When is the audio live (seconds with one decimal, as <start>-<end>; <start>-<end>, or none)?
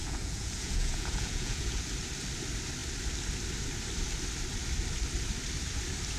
1.8-6.2